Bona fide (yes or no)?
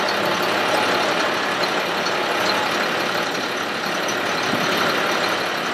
yes